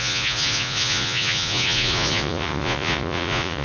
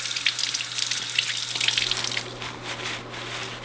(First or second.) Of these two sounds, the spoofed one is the first